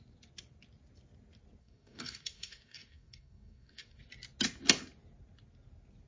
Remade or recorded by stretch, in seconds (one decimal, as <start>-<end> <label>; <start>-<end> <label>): 0.0-1.6 recorded; 1.6-4.0 remade; 4.0-6.1 recorded